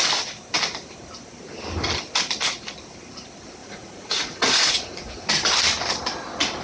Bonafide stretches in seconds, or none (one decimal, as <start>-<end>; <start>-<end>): 0.0-3.6; 5.3-6.6